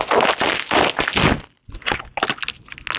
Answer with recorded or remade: recorded